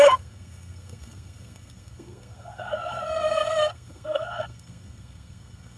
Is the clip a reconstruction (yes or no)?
yes